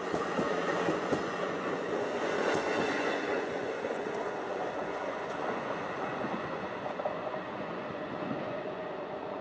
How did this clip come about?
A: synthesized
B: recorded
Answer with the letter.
A